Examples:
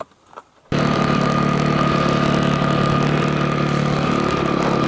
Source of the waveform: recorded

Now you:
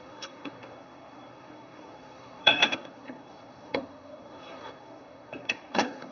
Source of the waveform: remade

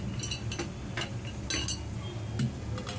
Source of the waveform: recorded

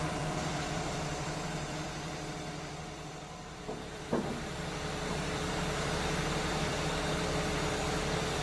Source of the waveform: remade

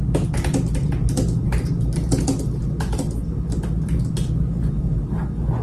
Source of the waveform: recorded